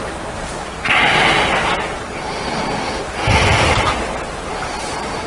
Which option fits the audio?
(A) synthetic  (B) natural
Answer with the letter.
B